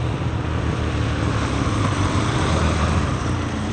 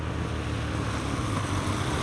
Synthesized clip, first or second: first